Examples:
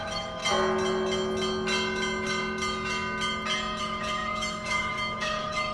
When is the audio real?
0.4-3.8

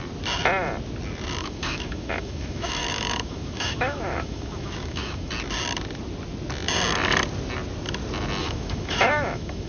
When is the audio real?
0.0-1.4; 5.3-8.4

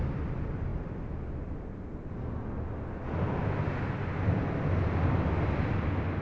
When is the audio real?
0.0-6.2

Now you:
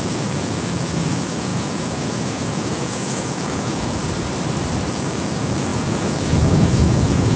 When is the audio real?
4.0-4.9

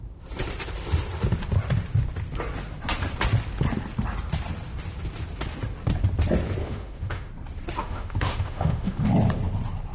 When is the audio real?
0.0-6.6; 7.3-7.8; 9.1-9.9